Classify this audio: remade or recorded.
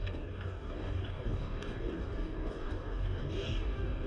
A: remade